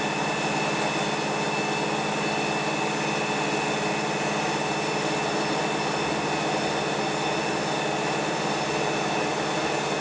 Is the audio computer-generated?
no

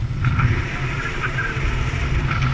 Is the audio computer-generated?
no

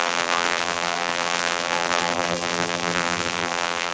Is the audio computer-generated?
yes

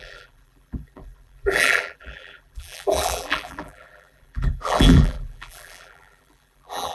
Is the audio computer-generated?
yes